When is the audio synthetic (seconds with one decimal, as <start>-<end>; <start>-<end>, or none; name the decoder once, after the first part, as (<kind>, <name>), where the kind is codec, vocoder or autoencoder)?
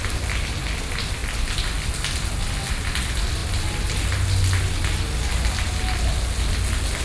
none